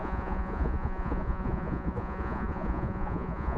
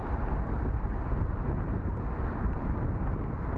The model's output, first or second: first